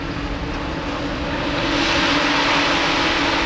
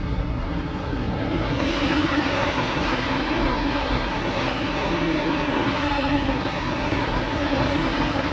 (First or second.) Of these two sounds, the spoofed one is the second